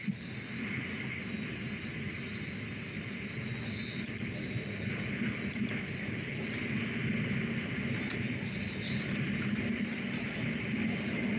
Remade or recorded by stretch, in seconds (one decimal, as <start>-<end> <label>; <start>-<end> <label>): 0.0-11.4 recorded